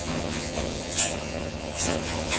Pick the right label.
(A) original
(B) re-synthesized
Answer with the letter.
B